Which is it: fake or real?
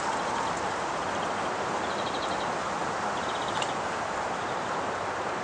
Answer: real